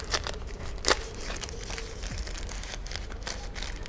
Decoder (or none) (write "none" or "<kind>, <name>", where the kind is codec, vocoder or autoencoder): none